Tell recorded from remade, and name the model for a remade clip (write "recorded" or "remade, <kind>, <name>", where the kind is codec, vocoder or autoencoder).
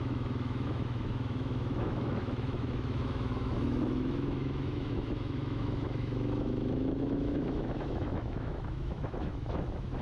remade, autoencoder, DAC-VAE